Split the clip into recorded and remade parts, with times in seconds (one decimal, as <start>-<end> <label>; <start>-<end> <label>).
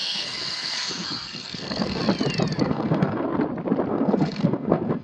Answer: 0.0-2.0 remade; 2.0-2.6 recorded; 2.6-3.3 remade; 3.3-3.9 recorded; 3.9-5.0 remade